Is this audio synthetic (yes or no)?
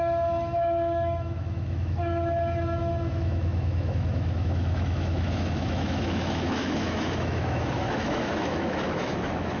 yes